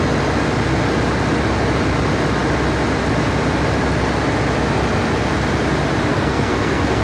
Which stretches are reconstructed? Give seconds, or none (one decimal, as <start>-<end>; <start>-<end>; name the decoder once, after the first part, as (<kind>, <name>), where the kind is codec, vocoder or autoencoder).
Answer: 6.1-7.0 (codec, SNAC)